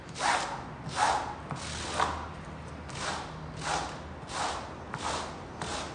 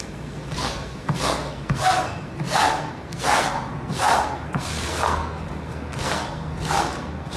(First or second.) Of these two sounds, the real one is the first